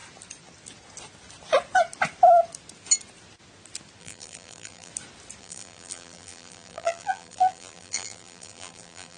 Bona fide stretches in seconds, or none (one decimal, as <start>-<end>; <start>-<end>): 0.0-4.0; 4.9-5.4